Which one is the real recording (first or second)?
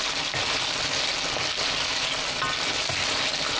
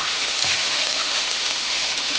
first